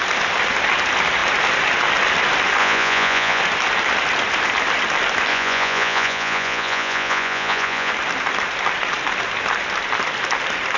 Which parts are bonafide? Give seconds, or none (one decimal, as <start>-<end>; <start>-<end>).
0.0-2.6; 3.4-5.3; 7.9-10.8